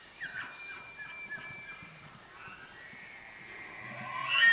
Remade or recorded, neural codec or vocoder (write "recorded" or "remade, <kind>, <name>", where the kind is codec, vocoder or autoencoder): remade, vocoder, BigVGAN v2